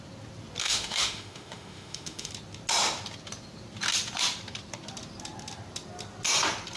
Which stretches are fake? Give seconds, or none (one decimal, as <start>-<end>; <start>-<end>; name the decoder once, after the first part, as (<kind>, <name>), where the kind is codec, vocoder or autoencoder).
0.6-2.3 (autoencoder, DAC-VAE)